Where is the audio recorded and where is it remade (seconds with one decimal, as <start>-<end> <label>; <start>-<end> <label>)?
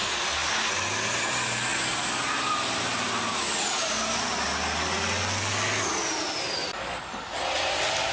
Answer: 0.0-8.1 recorded